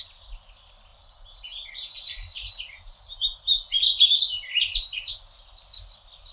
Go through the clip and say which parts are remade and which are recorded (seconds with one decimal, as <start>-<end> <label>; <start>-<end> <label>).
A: 0.0-0.9 recorded; 0.9-2.5 remade; 2.5-6.3 recorded